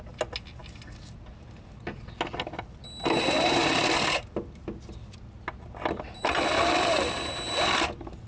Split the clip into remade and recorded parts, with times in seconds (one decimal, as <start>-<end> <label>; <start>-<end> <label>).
0.0-8.3 recorded

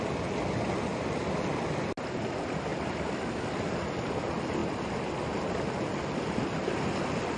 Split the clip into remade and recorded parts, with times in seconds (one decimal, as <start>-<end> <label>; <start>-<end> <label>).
0.0-7.4 recorded

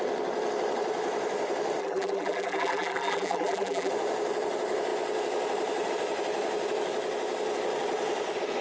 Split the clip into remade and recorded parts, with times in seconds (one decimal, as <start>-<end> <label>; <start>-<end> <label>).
0.0-1.8 recorded; 1.8-3.9 remade; 3.9-8.6 recorded

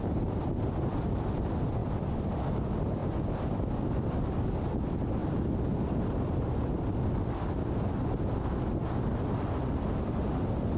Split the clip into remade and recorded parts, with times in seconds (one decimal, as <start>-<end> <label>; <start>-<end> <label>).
0.0-1.8 recorded; 1.8-2.4 remade; 2.4-3.0 recorded; 3.0-4.4 remade; 4.4-10.8 recorded